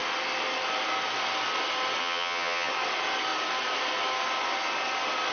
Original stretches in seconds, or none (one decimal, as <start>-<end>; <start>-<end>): 0.0-2.0; 2.7-5.3